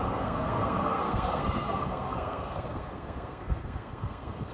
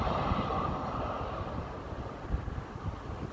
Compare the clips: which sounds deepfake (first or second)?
first